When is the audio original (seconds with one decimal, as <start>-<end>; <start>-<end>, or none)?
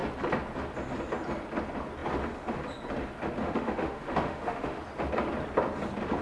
0.0-3.4; 4.8-6.2